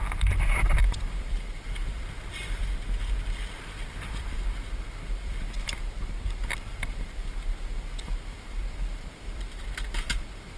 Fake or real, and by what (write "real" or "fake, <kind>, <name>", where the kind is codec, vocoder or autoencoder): fake, vocoder, BigVGAN v2